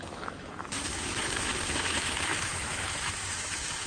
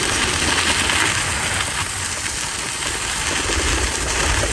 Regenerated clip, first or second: first